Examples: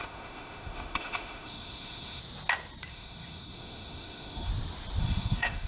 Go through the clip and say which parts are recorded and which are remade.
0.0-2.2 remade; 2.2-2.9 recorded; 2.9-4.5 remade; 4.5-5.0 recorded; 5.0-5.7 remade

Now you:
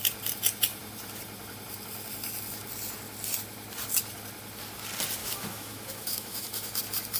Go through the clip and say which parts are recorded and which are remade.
0.0-5.2 recorded; 5.2-6.8 remade; 6.8-7.2 recorded

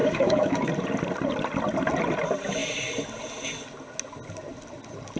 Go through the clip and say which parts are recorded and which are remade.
0.0-0.7 remade; 0.7-5.2 recorded

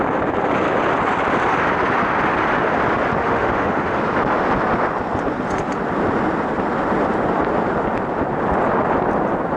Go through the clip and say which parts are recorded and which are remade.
0.0-3.2 recorded; 3.2-4.0 remade; 4.0-9.6 recorded

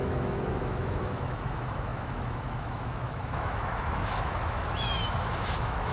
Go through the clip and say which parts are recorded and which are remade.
0.0-5.9 remade